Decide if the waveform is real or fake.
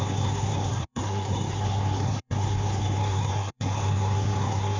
fake